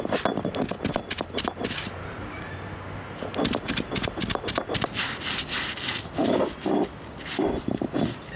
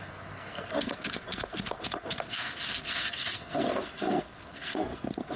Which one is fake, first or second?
second